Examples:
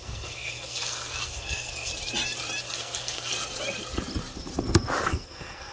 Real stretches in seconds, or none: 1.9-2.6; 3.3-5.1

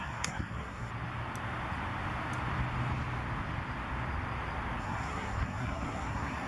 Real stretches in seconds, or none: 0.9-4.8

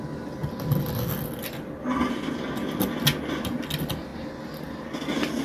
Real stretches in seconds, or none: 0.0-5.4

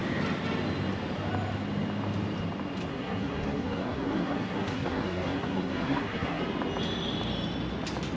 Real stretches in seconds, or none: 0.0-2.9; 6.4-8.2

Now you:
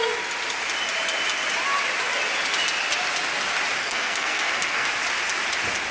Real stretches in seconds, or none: 0.0-3.8; 4.9-5.9